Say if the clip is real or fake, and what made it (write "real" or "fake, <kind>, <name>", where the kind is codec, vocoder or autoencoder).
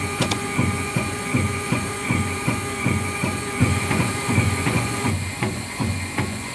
fake, vocoder, Vocos